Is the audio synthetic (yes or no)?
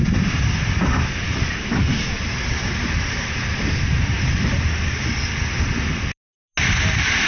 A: no